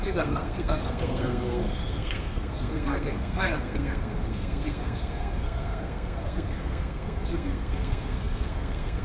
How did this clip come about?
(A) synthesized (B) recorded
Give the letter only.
A